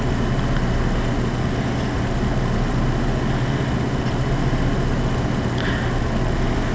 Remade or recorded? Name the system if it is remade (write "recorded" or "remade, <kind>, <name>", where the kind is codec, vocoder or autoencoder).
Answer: recorded